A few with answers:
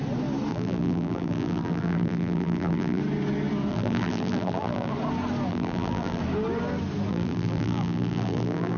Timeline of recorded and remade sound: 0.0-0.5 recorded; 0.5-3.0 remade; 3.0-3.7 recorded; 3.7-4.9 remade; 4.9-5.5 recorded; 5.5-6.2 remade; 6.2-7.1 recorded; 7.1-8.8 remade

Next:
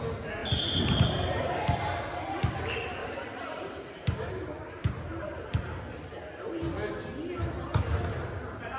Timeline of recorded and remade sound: 0.0-3.0 recorded; 3.0-5.7 remade; 5.7-8.8 recorded

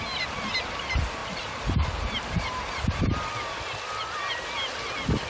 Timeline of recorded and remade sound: 0.0-1.2 recorded; 1.2-4.4 remade; 4.4-5.3 recorded